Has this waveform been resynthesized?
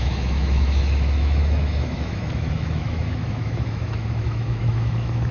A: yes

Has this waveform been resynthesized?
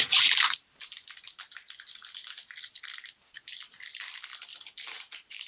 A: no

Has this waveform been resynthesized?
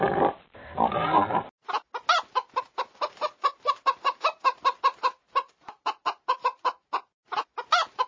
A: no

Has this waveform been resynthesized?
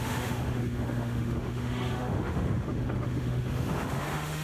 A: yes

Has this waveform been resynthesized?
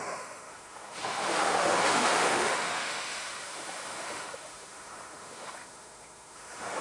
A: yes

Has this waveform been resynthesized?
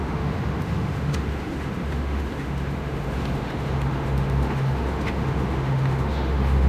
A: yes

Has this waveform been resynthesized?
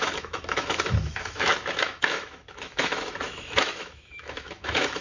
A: yes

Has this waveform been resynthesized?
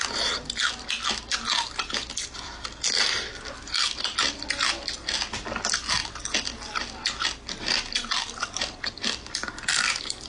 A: no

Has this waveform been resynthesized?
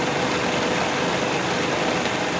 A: no